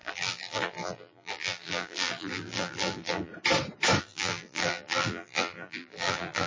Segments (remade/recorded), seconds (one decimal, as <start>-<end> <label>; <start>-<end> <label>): 0.0-3.3 remade; 3.3-4.0 recorded; 4.0-6.5 remade